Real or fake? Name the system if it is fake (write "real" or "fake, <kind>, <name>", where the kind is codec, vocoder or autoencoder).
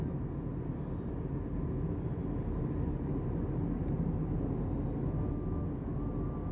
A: real